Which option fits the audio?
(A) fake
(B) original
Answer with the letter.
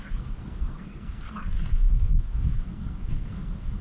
A